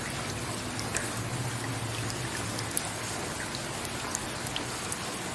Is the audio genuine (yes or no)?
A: yes